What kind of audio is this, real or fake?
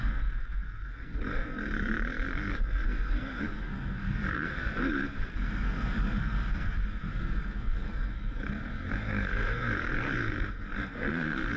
fake